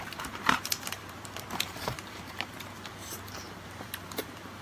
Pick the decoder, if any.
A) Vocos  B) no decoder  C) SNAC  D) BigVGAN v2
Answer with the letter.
D